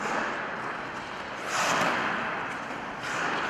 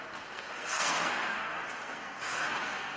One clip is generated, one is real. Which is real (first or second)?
first